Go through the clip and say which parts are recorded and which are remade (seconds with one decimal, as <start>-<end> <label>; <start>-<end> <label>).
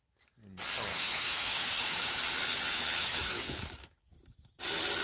0.0-0.9 recorded; 0.9-2.2 remade; 2.2-3.0 recorded; 3.0-4.1 remade; 4.1-5.0 recorded